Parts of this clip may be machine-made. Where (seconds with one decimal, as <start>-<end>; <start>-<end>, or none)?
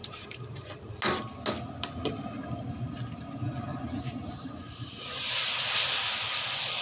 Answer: 0.0-0.7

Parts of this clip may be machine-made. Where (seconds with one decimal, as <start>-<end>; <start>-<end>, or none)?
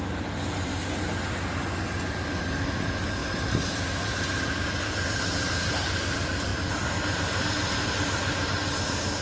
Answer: 0.0-0.7; 2.1-3.2; 3.7-9.2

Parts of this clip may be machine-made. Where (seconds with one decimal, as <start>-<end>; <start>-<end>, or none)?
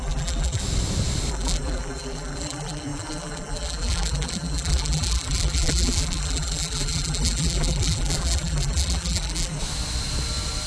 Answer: 0.0-0.6; 1.3-9.6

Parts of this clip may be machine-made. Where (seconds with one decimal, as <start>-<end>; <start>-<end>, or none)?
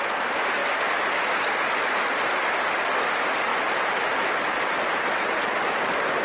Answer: 3.5-6.2